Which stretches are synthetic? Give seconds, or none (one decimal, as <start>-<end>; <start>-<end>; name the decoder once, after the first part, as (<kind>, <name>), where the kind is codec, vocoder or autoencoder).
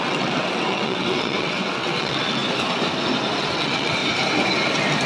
0.0-2.4 (vocoder, WaveNeXt); 3.4-4.0